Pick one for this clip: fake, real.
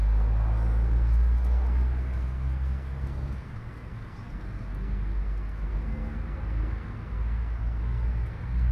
fake